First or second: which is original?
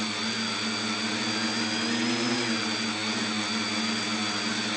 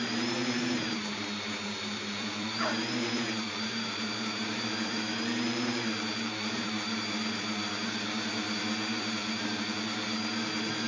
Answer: first